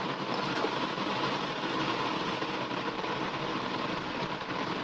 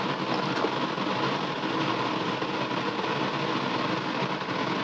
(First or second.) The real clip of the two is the second